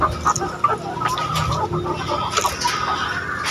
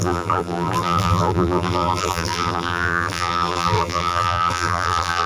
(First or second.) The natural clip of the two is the first